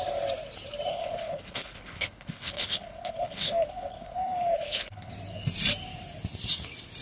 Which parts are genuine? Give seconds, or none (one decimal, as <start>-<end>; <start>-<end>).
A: 0.0-0.9; 5.1-7.0